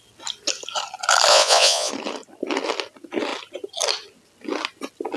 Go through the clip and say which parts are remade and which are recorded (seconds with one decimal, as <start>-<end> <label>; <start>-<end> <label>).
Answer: 0.0-1.3 recorded; 1.3-1.9 remade; 1.9-5.2 recorded